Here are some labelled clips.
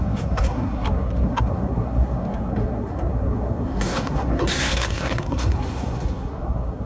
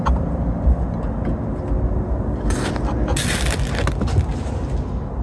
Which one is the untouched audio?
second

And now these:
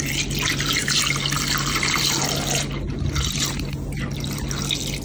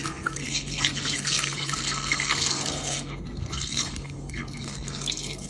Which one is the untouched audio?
first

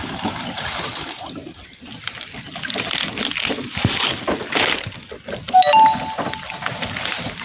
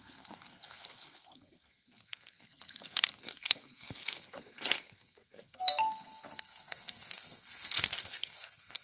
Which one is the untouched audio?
first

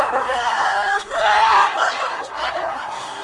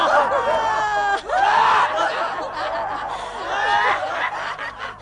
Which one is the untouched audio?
second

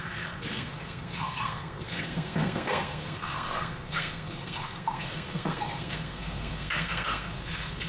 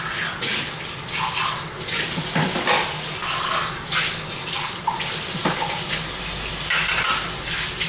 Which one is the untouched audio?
second